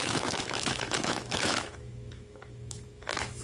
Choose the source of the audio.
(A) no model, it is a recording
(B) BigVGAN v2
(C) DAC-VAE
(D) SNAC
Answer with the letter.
C